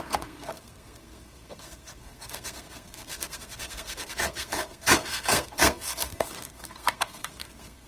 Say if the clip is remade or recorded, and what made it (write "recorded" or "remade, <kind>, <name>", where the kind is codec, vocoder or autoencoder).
remade, codec, SNAC